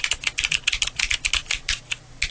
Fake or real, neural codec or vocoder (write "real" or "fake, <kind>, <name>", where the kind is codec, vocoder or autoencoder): real